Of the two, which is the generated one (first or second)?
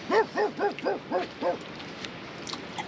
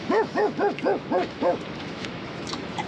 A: second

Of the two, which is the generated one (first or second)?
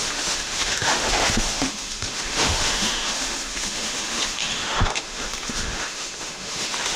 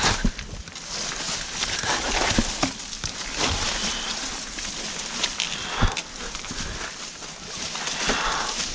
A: first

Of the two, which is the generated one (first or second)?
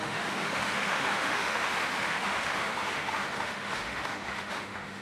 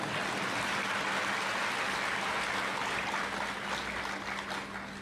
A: first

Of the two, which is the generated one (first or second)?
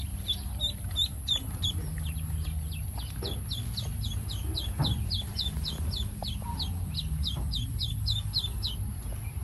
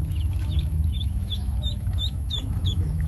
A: second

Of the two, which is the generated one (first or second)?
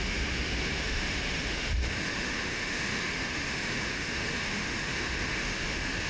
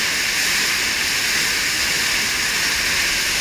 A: first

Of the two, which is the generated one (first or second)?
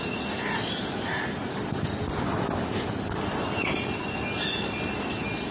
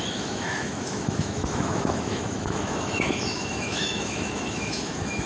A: second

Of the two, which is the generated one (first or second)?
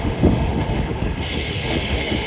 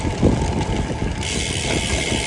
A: first